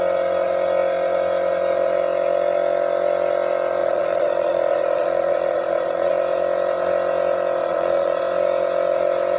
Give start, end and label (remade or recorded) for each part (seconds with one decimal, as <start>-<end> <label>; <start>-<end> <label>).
0.0-3.8 recorded; 3.8-6.1 remade; 6.1-7.6 recorded; 7.6-8.2 remade; 8.2-9.4 recorded